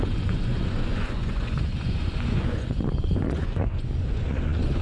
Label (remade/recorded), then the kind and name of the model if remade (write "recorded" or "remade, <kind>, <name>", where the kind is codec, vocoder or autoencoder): remade, vocoder, Vocos